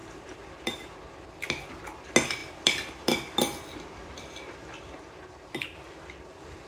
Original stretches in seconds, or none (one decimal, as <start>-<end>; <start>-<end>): 1.3-2.4